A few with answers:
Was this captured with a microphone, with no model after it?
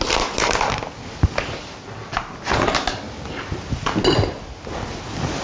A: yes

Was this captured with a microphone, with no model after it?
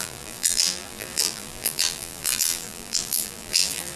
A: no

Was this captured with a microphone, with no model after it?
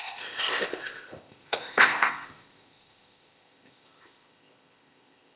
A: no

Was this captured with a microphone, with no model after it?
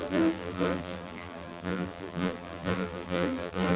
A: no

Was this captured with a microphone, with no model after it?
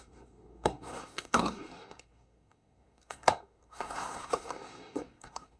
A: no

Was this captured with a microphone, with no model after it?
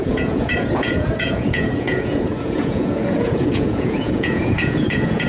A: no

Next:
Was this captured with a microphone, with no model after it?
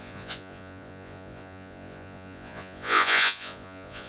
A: no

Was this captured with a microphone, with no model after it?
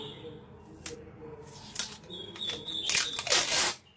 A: yes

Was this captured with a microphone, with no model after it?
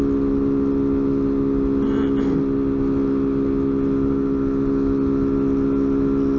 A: yes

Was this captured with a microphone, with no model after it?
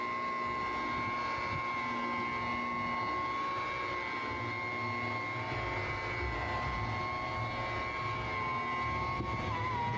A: yes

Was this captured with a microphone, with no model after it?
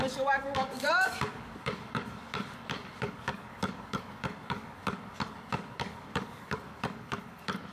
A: no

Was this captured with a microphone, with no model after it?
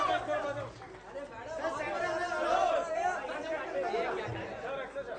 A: yes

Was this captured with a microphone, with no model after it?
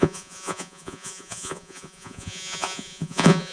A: no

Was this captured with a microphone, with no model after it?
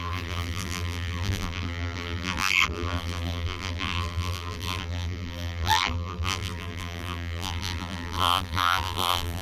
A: no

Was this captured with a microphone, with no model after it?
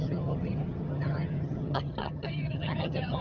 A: no